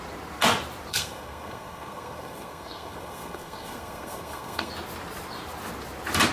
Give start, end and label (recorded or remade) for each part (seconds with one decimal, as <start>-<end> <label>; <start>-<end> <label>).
0.0-0.9 recorded; 0.9-4.7 remade; 4.7-6.3 recorded